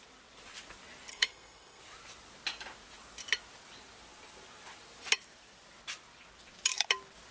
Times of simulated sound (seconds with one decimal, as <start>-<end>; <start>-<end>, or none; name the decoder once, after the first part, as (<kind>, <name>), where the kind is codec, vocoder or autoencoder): 1.1-1.8 (codec, SNAC)